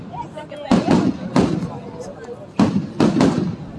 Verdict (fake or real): real